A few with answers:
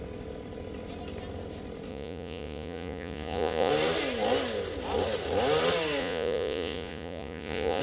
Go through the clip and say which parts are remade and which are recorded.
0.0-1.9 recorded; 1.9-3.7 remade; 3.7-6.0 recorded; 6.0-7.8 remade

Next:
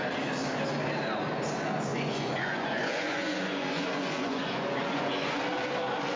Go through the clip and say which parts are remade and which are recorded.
0.0-1.9 recorded; 1.9-5.4 remade; 5.4-6.2 recorded

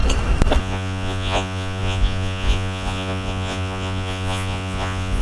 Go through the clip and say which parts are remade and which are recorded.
0.0-0.6 recorded; 0.6-5.2 remade

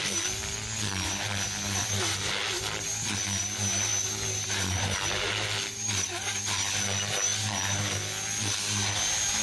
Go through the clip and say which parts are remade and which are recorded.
0.0-9.4 recorded